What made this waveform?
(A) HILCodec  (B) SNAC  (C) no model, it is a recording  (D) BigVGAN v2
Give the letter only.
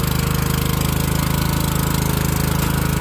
C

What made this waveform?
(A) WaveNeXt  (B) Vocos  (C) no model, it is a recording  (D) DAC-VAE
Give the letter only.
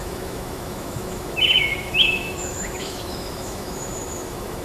D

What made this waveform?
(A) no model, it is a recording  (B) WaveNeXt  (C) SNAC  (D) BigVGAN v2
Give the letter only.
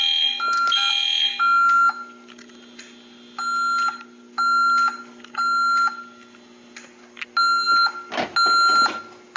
A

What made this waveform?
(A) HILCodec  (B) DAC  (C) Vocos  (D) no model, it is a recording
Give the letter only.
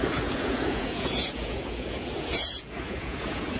C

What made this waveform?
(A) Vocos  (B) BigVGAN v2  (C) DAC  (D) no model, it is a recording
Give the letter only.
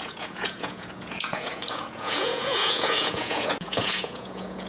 A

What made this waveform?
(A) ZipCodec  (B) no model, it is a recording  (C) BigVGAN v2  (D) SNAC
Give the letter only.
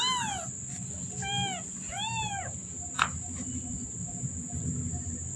B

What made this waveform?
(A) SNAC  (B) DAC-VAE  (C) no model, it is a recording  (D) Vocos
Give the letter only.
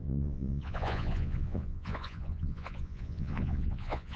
D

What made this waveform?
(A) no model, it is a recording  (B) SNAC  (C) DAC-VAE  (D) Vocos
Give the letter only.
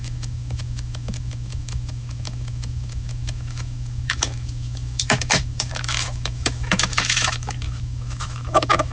C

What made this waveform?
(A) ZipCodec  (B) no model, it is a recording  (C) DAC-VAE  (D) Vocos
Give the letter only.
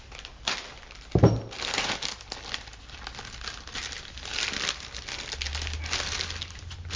B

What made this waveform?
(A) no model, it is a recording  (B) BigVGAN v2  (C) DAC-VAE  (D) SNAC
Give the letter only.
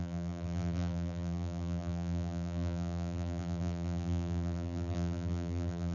B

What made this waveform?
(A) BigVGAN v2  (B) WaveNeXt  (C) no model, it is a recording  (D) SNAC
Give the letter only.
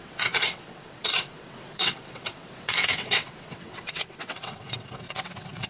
B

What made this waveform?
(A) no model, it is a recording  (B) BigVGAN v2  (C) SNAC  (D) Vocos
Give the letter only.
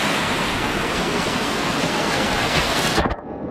C